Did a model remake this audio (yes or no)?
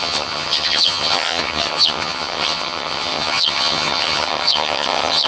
yes